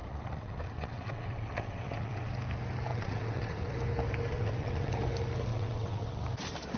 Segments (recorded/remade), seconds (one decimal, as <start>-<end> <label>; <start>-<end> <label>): 0.0-2.3 remade; 2.3-2.9 recorded; 2.9-3.7 remade; 3.7-4.3 recorded; 4.3-4.9 remade; 4.9-5.5 recorded; 5.5-6.2 remade; 6.2-6.8 recorded